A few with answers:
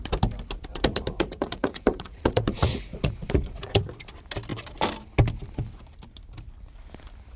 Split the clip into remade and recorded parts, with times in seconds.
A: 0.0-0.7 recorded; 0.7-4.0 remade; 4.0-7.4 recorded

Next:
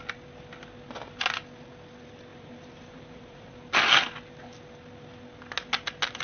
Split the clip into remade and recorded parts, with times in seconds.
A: 0.0-2.3 recorded; 2.3-3.5 remade; 3.5-6.2 recorded

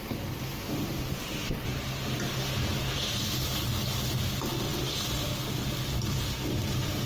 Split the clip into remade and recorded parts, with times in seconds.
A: 0.0-4.7 recorded; 4.7-5.3 remade; 5.3-7.1 recorded

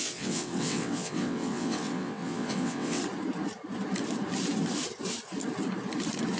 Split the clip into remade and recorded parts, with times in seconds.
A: 0.0-3.0 remade; 3.0-6.4 recorded